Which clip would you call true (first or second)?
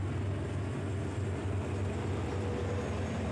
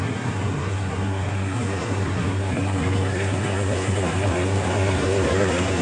first